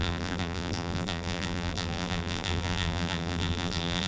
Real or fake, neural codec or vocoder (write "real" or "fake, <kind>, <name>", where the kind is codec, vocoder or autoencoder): fake, vocoder, BigVGAN v2